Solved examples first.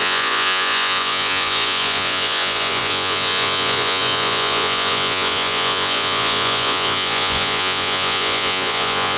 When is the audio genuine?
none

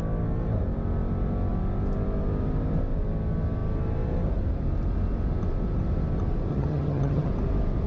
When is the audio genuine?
0.0-6.5; 7.3-7.9

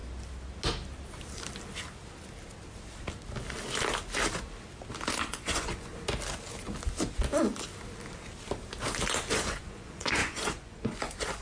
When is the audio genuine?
0.0-5.2; 5.9-9.3